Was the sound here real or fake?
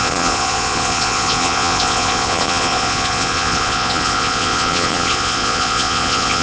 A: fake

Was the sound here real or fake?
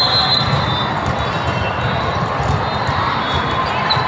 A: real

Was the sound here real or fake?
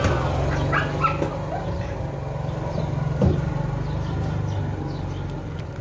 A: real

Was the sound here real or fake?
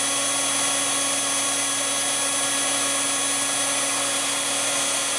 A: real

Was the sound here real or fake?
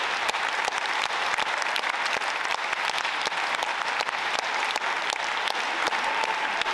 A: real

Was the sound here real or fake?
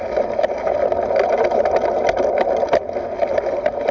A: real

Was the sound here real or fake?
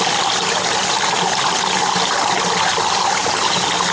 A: real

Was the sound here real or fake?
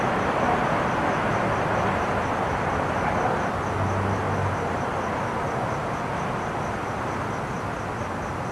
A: real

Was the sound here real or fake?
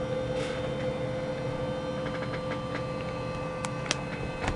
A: real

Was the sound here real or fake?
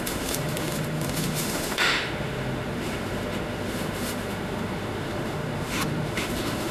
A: fake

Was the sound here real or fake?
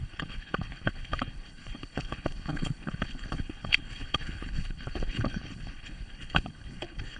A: fake